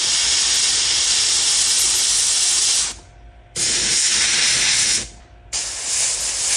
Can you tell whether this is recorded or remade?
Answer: recorded